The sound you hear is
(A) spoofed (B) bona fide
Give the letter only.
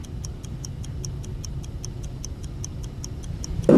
B